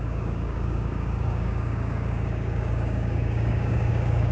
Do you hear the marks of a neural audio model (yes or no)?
yes